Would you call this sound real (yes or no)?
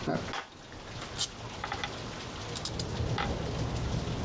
yes